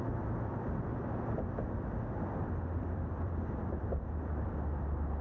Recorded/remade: remade